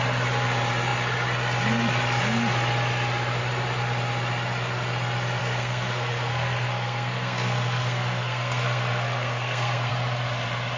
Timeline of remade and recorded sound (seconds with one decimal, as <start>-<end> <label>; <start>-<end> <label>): 0.0-5.4 recorded; 5.4-9.9 remade; 9.9-10.8 recorded